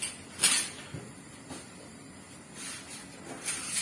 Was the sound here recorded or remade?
recorded